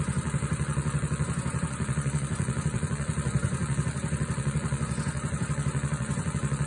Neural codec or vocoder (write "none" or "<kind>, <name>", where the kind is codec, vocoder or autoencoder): vocoder, Vocos